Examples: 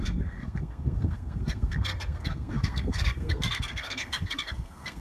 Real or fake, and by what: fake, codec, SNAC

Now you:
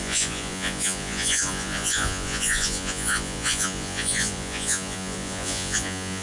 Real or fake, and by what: fake, vocoder, Vocos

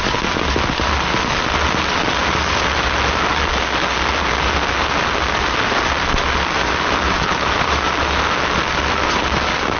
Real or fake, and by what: real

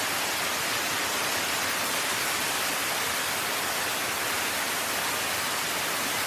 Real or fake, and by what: real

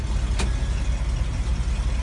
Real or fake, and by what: real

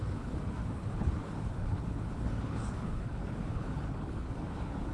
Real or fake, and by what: fake, codec, HILCodec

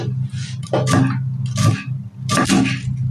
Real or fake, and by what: real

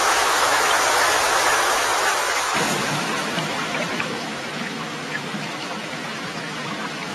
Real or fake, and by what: fake, autoencoder, DAC-VAE